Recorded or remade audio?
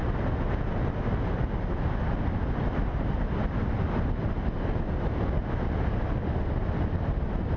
recorded